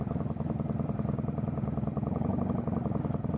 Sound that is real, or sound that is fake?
fake